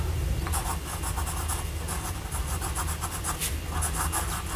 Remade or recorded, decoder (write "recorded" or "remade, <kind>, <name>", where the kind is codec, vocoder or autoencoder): recorded